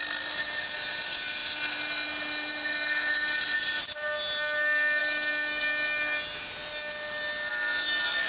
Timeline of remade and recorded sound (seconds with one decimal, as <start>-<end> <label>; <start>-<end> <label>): 0.0-8.3 recorded